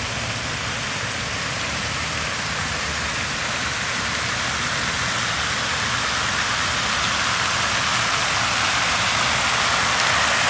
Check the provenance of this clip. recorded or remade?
recorded